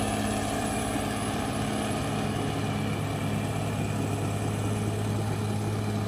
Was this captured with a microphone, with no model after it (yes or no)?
yes